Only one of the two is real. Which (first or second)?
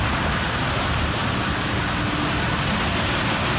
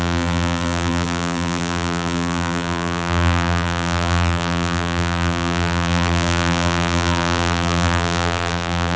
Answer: first